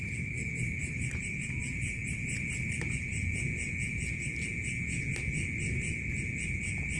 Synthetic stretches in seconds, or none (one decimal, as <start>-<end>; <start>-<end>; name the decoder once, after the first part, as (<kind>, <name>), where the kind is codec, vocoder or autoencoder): none